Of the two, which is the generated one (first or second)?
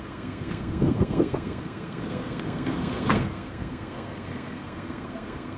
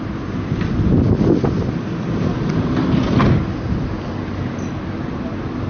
first